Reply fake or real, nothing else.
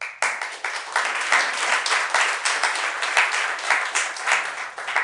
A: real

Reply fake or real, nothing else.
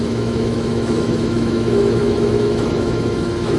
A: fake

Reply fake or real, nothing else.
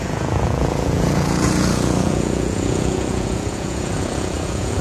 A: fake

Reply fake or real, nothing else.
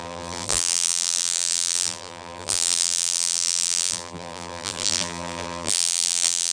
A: fake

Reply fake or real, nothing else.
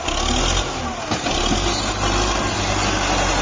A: real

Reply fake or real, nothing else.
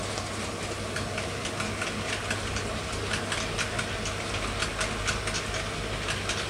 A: real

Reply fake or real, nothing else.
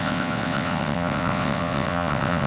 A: fake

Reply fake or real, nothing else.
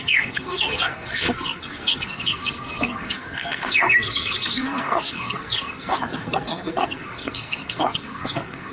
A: fake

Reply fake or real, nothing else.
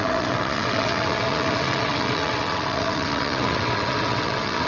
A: fake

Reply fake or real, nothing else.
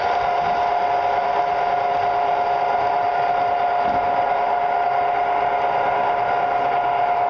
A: real